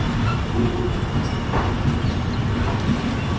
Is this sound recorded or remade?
recorded